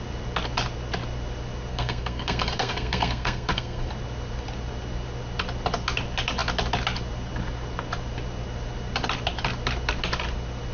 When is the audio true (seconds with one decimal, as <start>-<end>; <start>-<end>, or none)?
0.0-1.7; 3.9-10.7